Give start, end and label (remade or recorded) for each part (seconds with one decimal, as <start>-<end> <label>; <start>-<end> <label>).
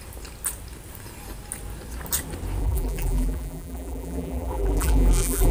0.0-2.6 recorded; 2.6-5.5 remade